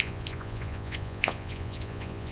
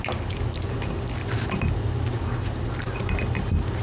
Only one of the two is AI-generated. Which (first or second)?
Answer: first